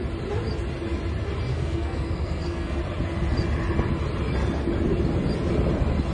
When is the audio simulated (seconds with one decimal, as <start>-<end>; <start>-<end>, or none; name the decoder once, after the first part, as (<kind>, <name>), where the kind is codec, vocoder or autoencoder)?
1.5-2.8 (codec, SNAC)